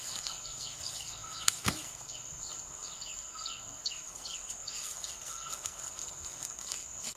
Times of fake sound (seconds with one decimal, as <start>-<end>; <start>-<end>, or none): 0.0-7.2